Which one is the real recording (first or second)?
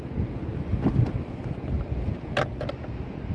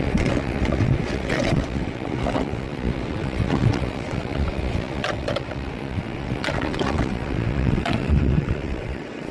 first